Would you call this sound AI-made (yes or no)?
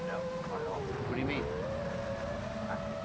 no